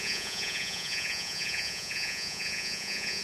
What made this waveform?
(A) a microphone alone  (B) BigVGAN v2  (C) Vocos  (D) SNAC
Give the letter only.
C